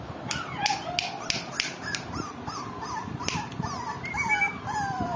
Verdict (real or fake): real